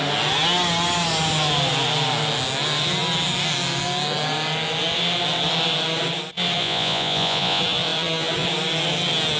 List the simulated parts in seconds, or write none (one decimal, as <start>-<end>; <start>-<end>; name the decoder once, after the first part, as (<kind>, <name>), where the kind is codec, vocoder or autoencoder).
6.6-7.6 (vocoder, Vocos)